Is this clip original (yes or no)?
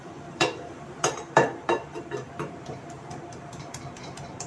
no